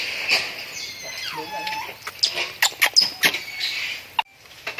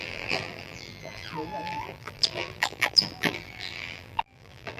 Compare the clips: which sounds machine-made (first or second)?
second